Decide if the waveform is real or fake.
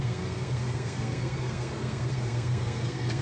fake